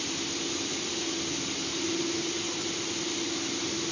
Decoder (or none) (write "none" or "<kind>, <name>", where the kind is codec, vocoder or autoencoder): none